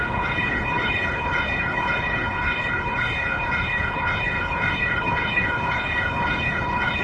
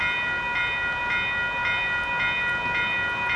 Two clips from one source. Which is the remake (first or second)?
first